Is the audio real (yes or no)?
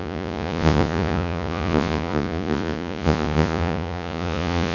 no